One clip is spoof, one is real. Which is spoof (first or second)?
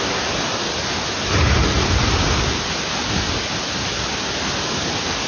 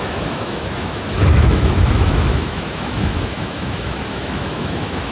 second